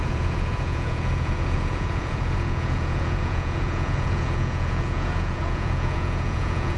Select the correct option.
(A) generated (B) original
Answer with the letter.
A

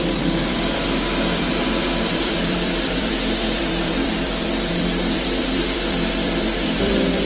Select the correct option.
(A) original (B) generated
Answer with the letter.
B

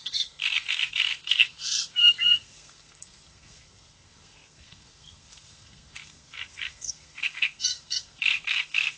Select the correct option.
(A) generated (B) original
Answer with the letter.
A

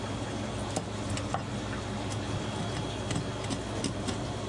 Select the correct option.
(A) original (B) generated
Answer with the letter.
A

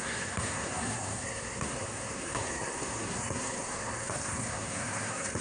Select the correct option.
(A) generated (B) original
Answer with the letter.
A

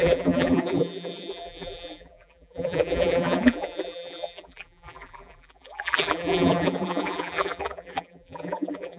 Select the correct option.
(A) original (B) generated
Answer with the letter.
B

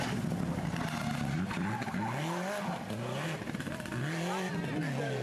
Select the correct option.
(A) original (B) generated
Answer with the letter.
A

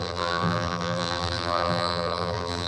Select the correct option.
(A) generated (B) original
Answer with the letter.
A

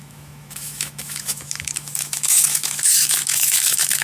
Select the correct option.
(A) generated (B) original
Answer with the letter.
A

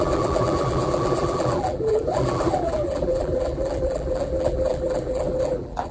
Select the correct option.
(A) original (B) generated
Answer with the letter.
B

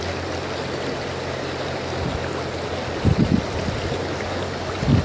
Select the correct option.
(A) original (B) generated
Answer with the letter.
A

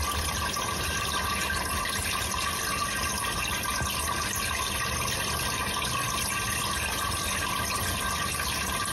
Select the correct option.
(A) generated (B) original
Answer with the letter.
B